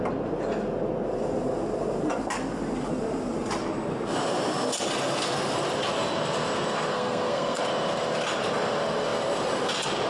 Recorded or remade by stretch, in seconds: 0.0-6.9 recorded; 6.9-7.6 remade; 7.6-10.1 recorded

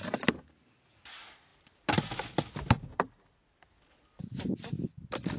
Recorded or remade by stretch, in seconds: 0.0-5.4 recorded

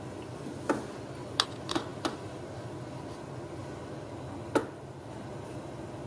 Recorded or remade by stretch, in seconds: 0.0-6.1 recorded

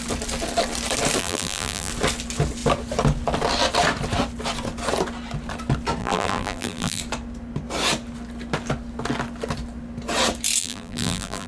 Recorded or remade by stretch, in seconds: 0.0-1.2 recorded; 1.2-1.9 remade; 1.9-6.0 recorded; 6.0-7.0 remade; 7.0-10.6 recorded; 10.6-11.5 remade

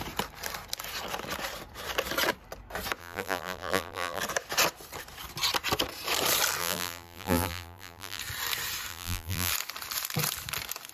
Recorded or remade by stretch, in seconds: 0.0-3.0 recorded; 3.0-4.2 remade; 4.2-6.6 recorded; 6.6-8.2 remade; 8.2-8.9 recorded; 8.9-9.5 remade; 9.5-10.9 recorded

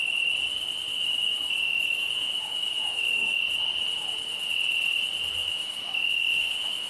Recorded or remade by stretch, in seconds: 0.0-0.9 recorded; 0.9-3.4 remade; 3.4-5.4 recorded; 5.4-6.9 remade

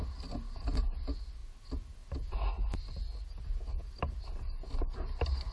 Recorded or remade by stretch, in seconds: 0.0-5.5 recorded